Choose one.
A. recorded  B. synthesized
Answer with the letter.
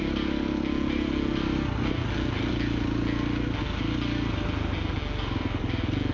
A